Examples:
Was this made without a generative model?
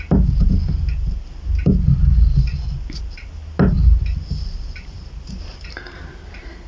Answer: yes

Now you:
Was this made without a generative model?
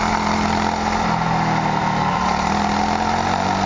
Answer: yes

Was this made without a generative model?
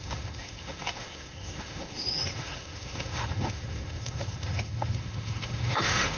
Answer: no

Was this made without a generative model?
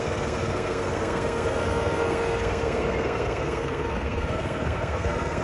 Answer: no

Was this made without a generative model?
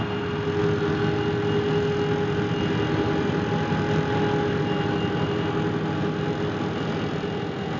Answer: yes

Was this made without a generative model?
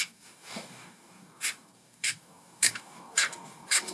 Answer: no